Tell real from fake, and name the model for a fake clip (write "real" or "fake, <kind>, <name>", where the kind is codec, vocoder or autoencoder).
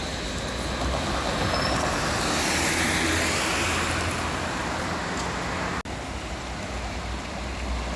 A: real